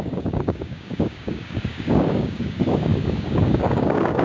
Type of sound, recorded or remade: remade